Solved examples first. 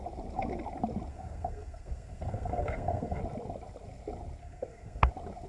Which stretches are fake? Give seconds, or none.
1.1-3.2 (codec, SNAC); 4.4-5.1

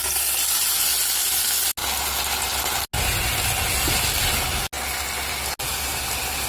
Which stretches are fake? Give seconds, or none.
none

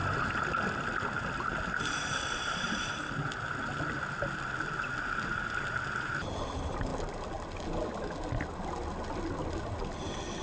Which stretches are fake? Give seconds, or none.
none

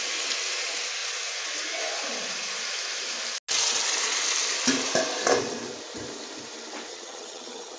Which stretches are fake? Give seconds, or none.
6.9-7.8 (vocoder, HiFi-GAN)

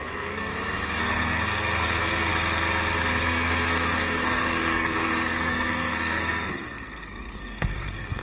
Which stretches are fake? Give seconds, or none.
0.0-0.5 (codec, SNAC); 1.0-2.3; 3.2-8.2

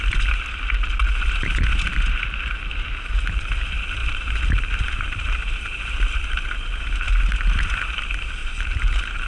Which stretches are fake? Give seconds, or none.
4.0-6.8 (vocoder, BigVGAN v2); 8.4-9.3

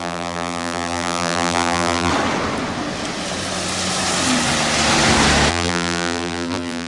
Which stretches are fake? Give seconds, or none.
0.0-2.1 (vocoder, BigVGAN v2); 5.5-6.9

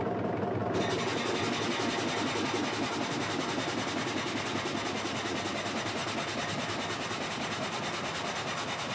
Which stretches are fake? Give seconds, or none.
none